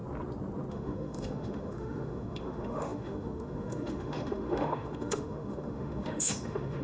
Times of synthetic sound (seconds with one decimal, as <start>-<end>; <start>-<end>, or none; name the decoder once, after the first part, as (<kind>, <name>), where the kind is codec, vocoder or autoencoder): 0.7-6.8 (autoencoder, DAC-VAE)